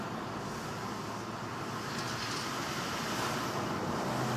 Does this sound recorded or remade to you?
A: recorded